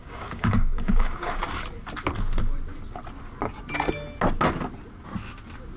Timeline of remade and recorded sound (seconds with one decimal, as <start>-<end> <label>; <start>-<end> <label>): 0.0-1.4 remade; 1.4-5.8 recorded